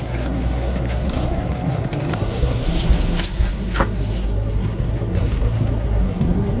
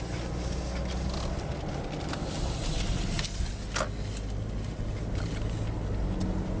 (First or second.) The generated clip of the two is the first